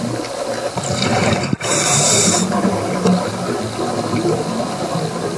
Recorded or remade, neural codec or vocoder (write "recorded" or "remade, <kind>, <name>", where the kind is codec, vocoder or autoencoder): recorded